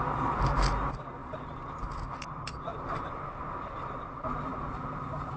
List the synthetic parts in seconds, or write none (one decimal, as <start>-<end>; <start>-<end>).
1.2-1.8; 2.7-3.7